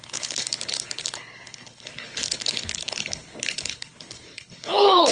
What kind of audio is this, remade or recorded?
remade